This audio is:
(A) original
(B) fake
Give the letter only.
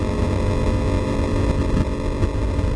A